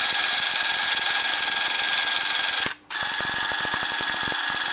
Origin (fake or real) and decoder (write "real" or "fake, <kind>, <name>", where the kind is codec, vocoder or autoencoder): real